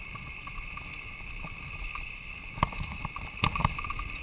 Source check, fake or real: real